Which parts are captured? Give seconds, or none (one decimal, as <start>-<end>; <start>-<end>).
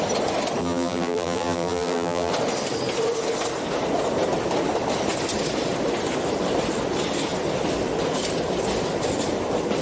0.0-0.6; 2.3-9.8